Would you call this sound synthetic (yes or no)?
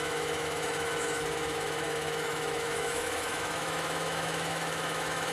yes